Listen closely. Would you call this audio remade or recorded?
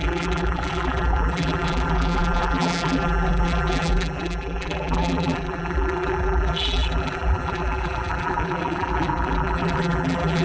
remade